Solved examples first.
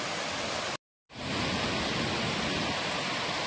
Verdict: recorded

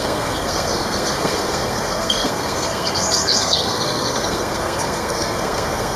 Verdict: remade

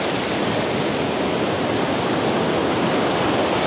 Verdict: recorded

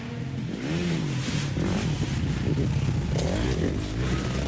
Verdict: recorded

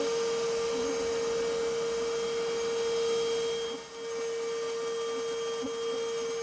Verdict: recorded